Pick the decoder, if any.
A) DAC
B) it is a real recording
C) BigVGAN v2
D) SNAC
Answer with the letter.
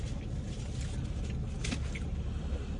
B